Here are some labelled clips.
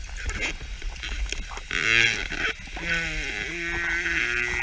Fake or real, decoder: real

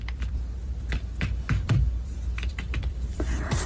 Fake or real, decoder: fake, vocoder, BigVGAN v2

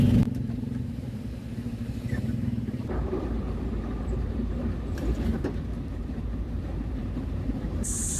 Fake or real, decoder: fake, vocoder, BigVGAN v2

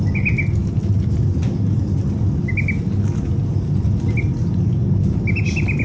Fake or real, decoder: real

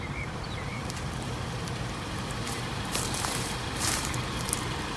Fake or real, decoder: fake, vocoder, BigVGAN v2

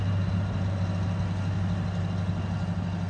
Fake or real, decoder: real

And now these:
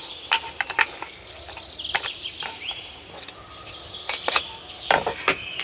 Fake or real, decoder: real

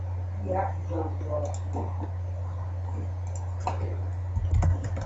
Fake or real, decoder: real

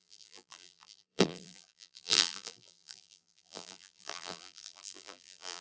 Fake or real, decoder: fake, vocoder, BigVGAN v2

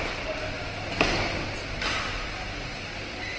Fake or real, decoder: real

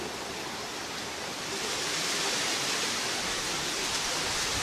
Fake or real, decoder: fake, vocoder, BigVGAN v2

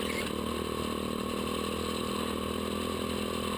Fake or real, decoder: real